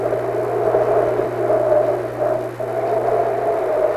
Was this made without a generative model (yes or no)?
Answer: no